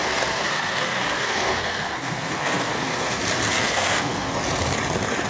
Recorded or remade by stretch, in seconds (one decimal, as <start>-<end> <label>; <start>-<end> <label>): 0.0-3.2 remade; 3.2-3.6 recorded; 3.6-4.3 remade; 4.3-5.3 recorded